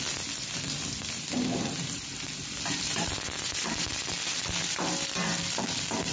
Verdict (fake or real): fake